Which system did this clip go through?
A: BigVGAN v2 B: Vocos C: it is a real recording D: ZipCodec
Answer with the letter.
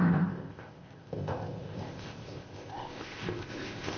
D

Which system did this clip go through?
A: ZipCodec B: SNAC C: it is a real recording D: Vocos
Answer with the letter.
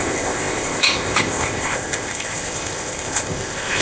A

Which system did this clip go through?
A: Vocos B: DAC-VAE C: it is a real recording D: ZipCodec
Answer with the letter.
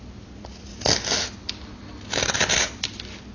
C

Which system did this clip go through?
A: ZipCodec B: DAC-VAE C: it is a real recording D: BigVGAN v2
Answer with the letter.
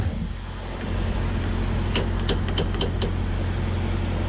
C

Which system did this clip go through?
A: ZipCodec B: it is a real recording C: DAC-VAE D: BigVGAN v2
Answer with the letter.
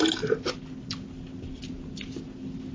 B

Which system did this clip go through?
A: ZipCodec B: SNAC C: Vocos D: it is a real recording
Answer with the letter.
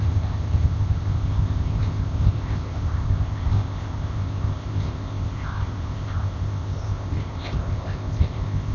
A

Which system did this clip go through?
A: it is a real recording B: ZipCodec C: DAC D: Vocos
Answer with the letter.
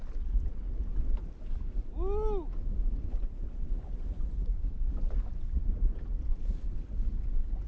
A